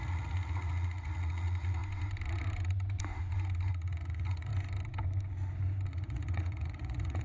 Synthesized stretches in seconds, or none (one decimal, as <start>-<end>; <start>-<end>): 0.0-1.8; 3.7-4.5; 5.9-7.2